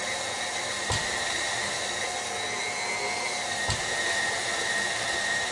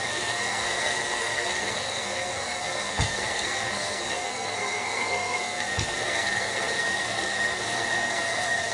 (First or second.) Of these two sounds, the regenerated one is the second